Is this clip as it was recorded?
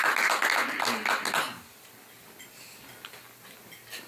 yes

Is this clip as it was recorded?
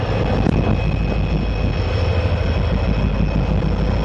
yes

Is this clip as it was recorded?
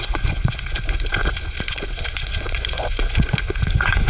no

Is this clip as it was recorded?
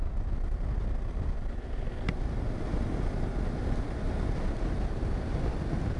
yes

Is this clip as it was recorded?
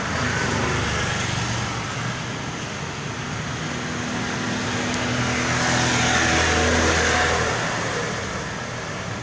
yes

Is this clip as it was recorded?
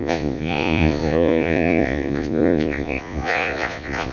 no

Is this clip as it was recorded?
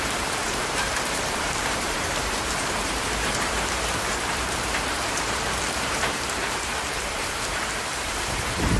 no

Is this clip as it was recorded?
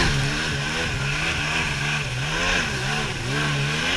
yes